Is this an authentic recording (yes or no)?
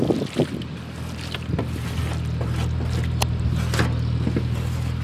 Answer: yes